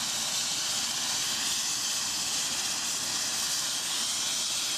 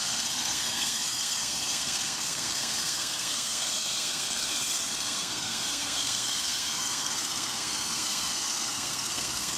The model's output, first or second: second